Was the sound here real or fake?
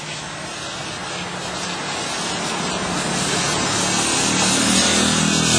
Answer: real